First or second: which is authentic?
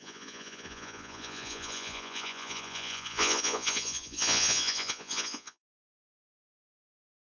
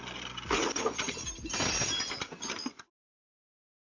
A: second